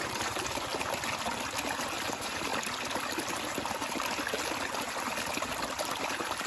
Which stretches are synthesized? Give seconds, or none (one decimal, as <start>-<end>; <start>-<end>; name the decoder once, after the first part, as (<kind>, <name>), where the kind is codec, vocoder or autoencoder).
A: 0.0-0.7 (vocoder, BigVGAN v2); 2.1-2.5; 6.0-6.5